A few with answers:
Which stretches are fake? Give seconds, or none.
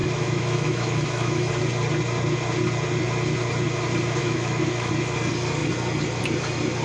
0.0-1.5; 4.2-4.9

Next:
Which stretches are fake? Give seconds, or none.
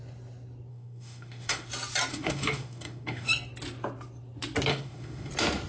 0.7-1.7; 2.1-3.3; 4.7-5.3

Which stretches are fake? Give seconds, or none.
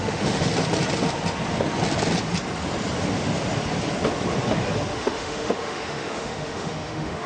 0.0-0.5; 4.9-7.3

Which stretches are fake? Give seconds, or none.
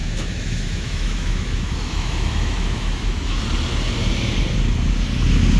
0.0-3.4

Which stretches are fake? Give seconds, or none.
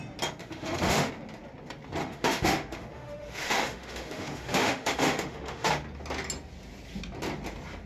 0.4-1.1; 2.0-5.7